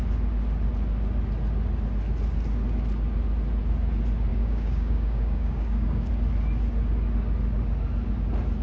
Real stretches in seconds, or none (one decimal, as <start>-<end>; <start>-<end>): 0.0-4.3; 6.1-8.6